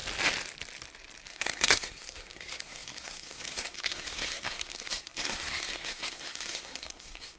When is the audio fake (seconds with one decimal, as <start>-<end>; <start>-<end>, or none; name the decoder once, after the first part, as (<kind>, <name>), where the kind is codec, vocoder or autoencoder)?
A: 1.3-7.4 (codec, SNAC)